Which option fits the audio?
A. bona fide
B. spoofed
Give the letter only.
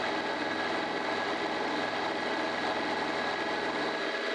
A